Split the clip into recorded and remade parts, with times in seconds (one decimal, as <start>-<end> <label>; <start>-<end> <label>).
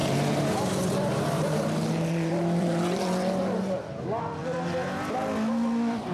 0.0-3.7 remade; 3.7-6.1 recorded